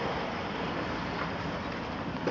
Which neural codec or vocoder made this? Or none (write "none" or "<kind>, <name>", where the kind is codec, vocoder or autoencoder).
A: none